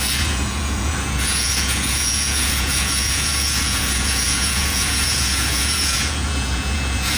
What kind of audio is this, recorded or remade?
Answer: remade